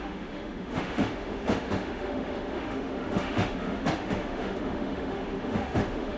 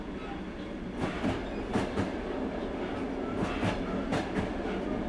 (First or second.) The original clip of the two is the second